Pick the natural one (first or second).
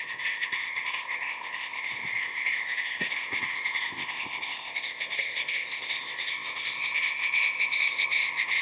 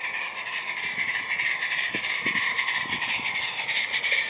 second